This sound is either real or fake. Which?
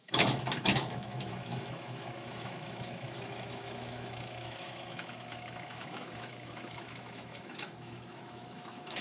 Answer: fake